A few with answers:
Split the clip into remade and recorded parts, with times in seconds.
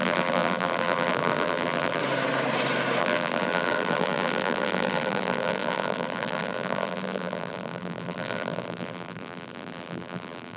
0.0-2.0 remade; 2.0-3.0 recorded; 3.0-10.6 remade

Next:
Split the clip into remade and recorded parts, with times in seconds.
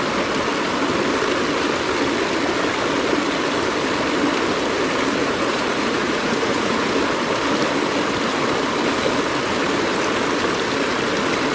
0.0-5.2 recorded; 5.2-6.9 remade; 6.9-11.5 recorded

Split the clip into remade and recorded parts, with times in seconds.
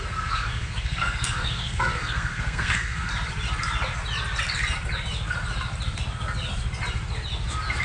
0.0-3.1 remade; 3.1-7.8 recorded